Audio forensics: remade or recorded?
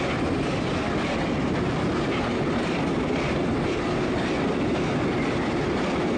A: recorded